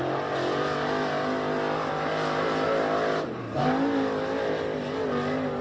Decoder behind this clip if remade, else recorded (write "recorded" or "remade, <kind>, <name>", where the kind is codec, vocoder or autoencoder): recorded